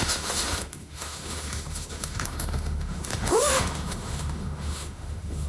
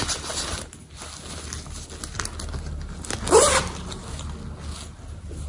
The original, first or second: second